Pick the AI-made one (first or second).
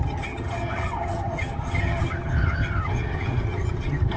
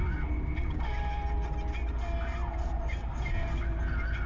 first